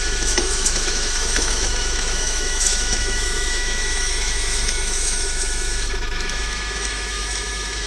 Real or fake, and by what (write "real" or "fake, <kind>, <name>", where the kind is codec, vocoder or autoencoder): fake, autoencoder, DAC-VAE